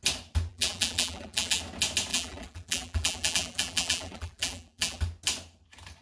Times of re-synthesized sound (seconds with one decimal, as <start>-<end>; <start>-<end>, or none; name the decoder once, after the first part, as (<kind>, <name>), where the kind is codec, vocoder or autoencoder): 0.5-1.6 (vocoder, BigVGAN v2); 2.1-5.0

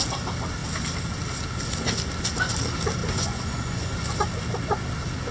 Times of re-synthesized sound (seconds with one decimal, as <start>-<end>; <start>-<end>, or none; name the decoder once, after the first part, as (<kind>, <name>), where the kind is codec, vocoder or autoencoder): 3.0-4.1 (vocoder, Vocos)